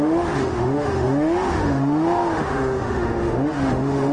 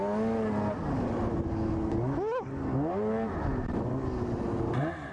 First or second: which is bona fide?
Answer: second